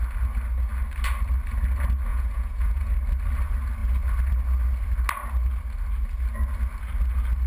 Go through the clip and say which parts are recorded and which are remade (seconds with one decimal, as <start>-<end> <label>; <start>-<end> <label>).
0.0-2.1 recorded; 2.1-2.9 remade; 2.9-7.5 recorded